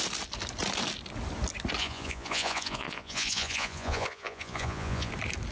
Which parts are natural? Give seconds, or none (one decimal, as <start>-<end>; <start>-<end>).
0.0-1.8; 5.1-5.5